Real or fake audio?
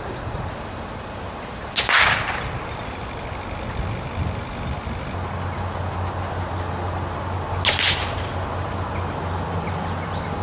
real